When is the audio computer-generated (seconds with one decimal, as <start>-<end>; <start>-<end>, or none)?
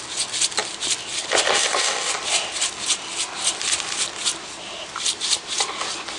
1.5-2.1